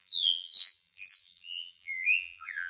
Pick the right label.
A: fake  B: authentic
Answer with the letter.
A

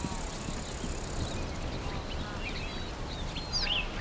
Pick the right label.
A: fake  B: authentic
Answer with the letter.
B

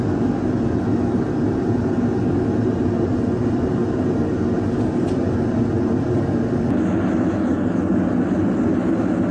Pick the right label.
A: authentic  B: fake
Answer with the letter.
A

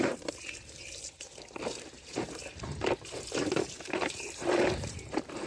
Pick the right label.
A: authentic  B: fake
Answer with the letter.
B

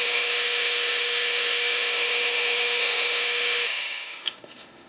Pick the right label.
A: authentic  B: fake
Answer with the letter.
B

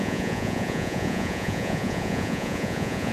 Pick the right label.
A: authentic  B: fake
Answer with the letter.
B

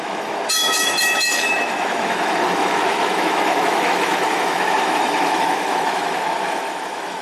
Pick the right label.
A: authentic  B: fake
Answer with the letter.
B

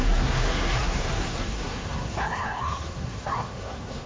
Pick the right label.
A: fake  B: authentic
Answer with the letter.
A